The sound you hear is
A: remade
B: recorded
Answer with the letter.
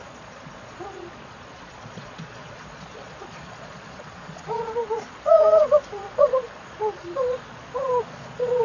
A